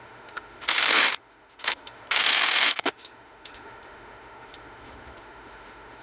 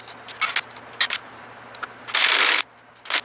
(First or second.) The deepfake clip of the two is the first